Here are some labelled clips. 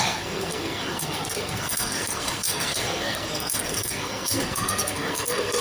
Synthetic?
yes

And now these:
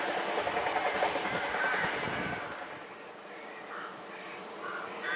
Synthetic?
no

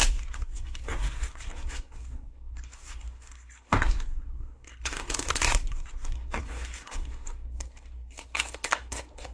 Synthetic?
yes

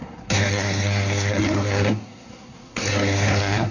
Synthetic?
yes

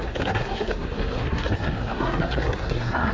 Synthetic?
yes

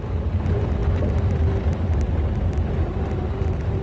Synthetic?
no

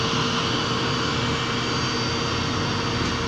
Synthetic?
no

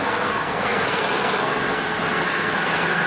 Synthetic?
yes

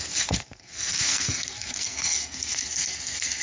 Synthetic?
yes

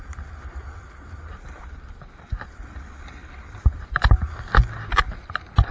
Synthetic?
no